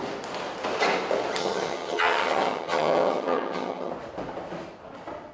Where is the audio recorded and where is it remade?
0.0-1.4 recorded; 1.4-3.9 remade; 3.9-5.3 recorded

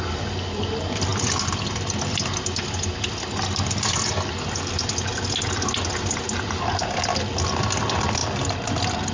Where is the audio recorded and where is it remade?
0.0-9.1 recorded

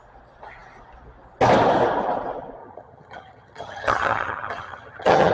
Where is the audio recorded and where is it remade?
0.0-2.6 recorded; 2.6-5.3 remade

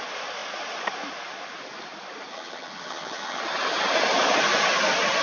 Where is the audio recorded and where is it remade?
0.0-2.3 recorded; 2.3-3.4 remade; 3.4-5.2 recorded

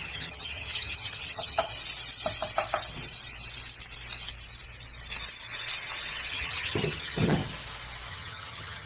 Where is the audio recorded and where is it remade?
0.0-1.7 remade; 1.7-6.3 recorded; 6.3-7.4 remade; 7.4-8.1 recorded; 8.1-8.9 remade

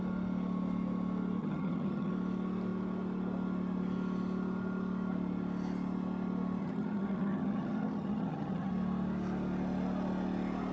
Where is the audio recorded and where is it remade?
0.0-1.4 recorded; 1.4-2.1 remade; 2.1-6.6 recorded; 6.6-8.7 remade; 8.7-10.7 recorded

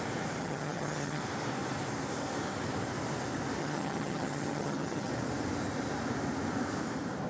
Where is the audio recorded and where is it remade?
0.0-0.4 recorded; 0.4-1.2 remade; 1.2-3.6 recorded; 3.6-5.1 remade; 5.1-7.3 recorded